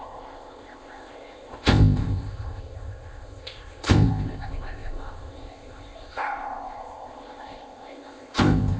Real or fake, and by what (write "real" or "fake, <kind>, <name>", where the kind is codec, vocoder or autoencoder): fake, codec, ZipCodec